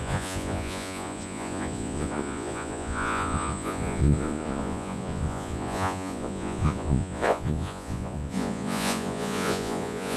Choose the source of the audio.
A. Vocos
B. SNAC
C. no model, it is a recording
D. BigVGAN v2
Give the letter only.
A